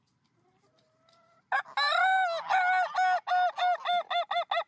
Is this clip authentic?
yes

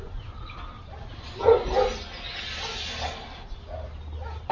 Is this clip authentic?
yes